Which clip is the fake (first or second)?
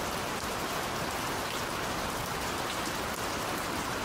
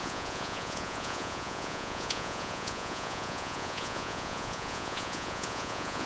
second